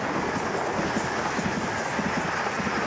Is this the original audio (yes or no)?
yes